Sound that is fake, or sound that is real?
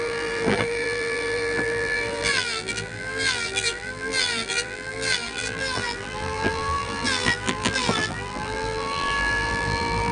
fake